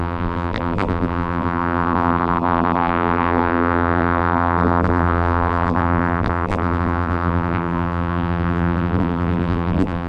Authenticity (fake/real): fake